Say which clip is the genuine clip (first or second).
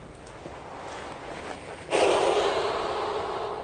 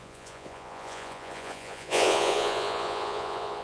first